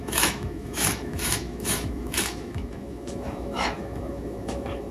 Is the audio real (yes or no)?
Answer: no